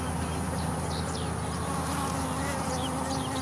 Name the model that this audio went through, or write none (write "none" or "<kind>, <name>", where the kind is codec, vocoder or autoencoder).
none